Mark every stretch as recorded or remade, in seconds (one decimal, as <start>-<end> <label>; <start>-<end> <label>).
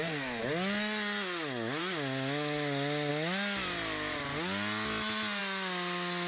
0.0-6.3 recorded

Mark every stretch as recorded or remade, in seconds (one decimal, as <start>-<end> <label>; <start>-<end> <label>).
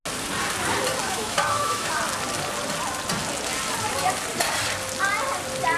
0.0-1.0 recorded; 1.0-1.9 remade; 1.9-5.8 recorded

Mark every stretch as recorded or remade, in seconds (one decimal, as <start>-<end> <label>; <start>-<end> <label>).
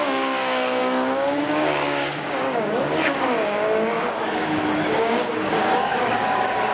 0.0-6.7 remade